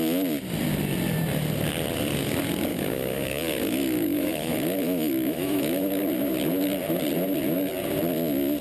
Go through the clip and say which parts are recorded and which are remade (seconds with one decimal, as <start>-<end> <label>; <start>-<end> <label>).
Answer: 0.0-2.7 recorded; 2.7-6.0 remade; 6.0-8.6 recorded